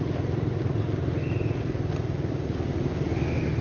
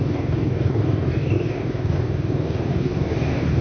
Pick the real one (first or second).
first